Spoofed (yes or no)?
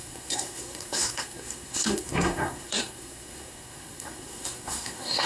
yes